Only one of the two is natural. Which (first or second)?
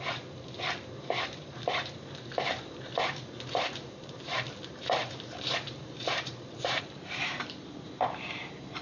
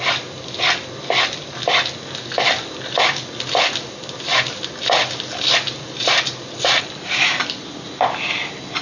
second